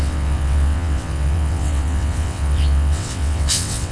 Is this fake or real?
fake